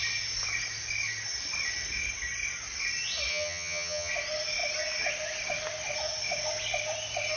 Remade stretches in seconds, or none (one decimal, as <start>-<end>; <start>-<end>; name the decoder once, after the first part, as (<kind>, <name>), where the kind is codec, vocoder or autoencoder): 3.3-4.1 (vocoder, HiFi-GAN)